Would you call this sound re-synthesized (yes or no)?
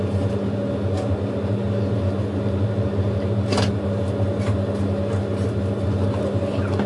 no